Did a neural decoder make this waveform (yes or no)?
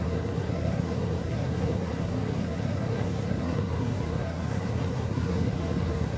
yes